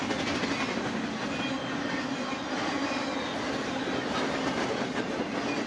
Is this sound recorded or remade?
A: recorded